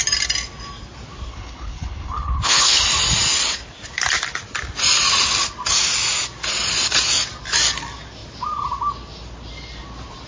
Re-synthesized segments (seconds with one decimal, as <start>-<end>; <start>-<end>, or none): 1.3-2.8